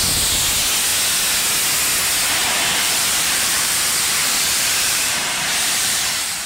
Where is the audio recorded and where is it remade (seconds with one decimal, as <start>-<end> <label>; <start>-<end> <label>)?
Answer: 0.0-2.4 recorded; 2.4-6.5 remade